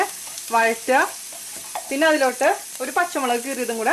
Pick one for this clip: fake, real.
real